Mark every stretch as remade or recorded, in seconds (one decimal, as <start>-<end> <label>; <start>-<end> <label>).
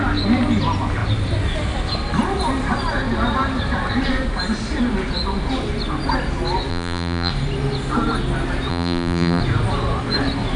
0.0-6.7 recorded; 6.7-7.3 remade; 7.3-8.7 recorded; 8.7-9.4 remade; 9.4-10.6 recorded